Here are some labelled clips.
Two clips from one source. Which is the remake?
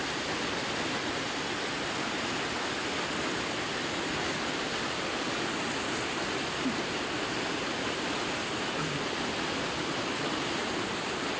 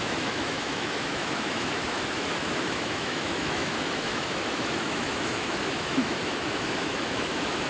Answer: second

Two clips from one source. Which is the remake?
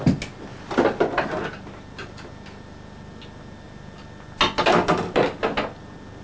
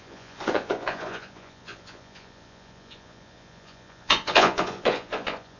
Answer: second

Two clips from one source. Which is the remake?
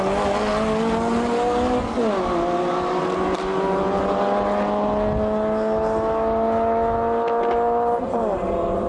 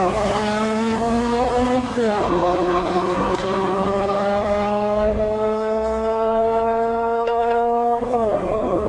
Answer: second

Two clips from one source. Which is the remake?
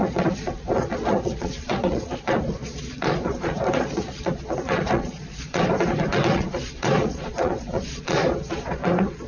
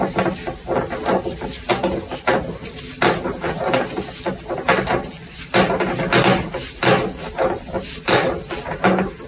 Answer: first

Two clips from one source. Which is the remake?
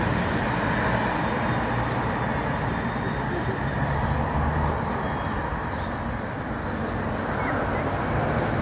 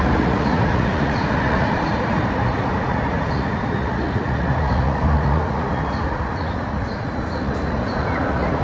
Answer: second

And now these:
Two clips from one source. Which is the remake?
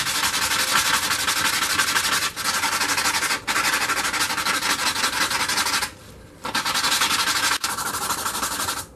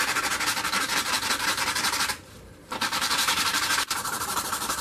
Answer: second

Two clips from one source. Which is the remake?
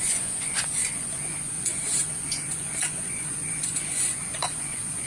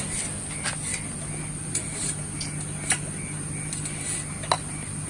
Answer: first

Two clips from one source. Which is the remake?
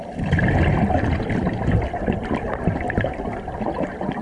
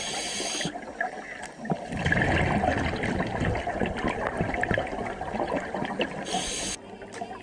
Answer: first